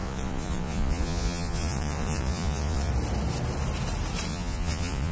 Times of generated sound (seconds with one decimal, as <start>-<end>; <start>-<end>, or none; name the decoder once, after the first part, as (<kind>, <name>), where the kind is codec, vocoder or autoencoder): 0.0-2.9 (vocoder, Vocos); 4.3-5.1